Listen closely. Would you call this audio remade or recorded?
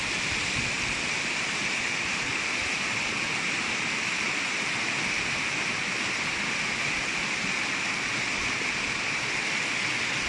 recorded